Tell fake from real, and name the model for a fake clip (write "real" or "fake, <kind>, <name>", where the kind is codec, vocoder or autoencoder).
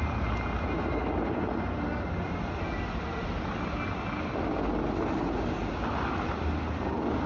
real